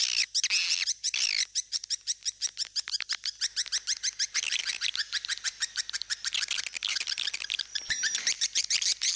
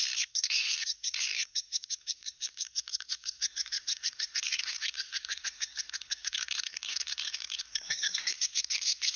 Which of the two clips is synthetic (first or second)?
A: second